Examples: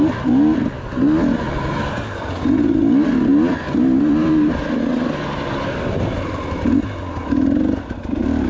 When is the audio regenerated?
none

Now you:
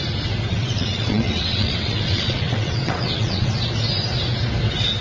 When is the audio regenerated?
0.5-3.5